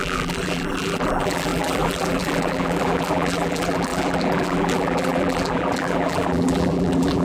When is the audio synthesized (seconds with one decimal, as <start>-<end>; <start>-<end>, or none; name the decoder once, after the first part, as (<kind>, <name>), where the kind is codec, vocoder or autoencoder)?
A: 0.0-7.2 (vocoder, BigVGAN v2)